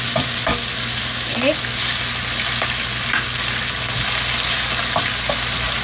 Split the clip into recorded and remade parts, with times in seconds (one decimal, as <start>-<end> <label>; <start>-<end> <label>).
0.0-5.8 recorded